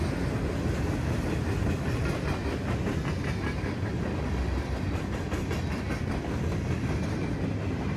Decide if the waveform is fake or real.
real